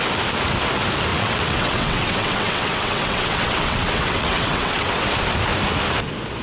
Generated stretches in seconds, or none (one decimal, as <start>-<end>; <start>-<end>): 1.1-4.9